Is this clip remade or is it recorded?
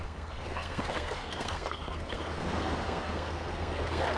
remade